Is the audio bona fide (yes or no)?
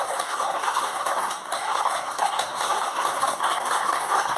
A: no